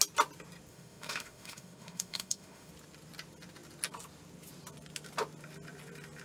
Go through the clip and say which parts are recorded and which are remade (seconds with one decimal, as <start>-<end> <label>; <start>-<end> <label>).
0.0-0.7 recorded; 0.7-2.7 remade; 2.7-6.2 recorded

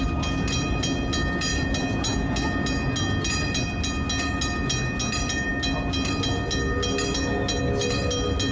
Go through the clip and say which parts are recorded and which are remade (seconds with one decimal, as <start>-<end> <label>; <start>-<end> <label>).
0.0-8.5 recorded